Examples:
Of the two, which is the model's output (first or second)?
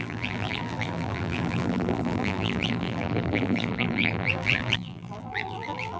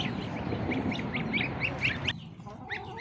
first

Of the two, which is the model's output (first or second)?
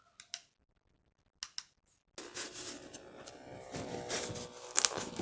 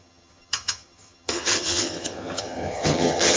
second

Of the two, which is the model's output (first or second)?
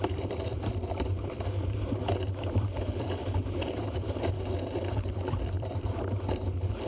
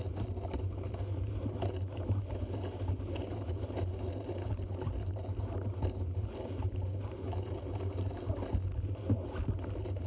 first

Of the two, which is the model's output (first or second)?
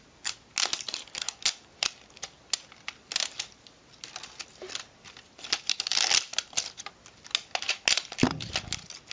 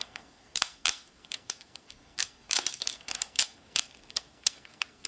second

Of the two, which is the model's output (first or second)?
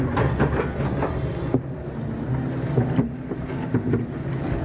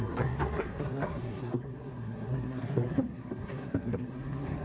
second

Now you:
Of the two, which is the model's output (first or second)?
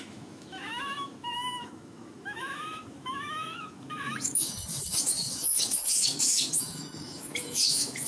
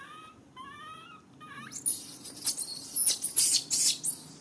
first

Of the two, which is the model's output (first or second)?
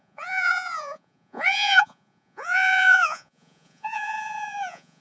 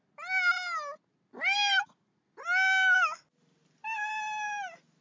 first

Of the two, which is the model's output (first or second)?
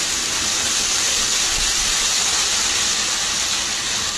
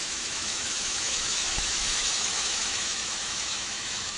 second